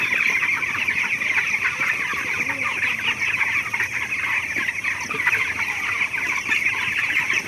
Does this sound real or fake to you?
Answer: real